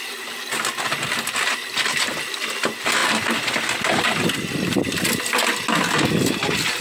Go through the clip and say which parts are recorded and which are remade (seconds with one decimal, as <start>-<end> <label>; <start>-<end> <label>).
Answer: 0.0-3.0 recorded; 3.0-4.0 remade; 4.0-6.8 recorded